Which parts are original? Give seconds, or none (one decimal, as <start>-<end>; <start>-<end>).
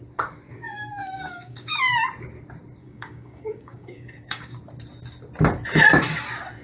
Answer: 0.0-0.5; 1.8-2.8; 4.6-6.6